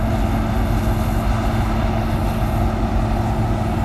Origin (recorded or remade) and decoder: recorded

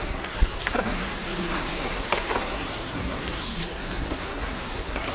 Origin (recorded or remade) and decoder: remade, codec, SNAC